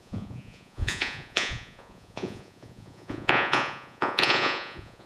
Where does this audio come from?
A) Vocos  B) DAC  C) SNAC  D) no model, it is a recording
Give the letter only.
A